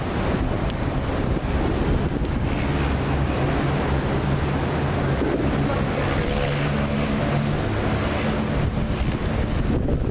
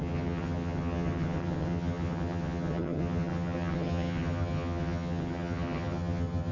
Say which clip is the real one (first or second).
first